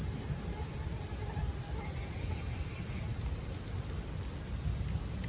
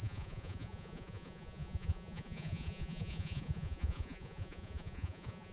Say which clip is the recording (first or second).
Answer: first